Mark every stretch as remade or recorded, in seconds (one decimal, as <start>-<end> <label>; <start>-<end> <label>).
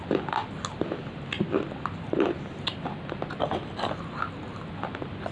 0.0-5.3 recorded